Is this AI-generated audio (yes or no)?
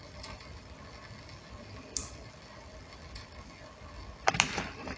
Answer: no